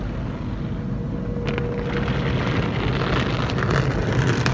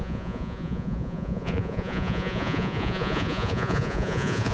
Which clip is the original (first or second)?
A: first